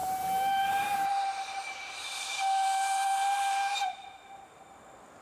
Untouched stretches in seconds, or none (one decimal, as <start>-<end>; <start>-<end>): 1.1-2.0; 4.6-5.2